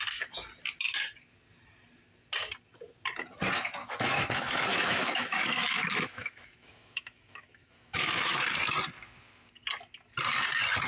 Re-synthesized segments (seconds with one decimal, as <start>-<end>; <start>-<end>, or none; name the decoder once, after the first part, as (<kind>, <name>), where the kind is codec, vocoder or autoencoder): 3.8-8.4 (autoencoder, DAC-VAE)